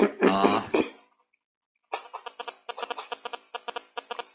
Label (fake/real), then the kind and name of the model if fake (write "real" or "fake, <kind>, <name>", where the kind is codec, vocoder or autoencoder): real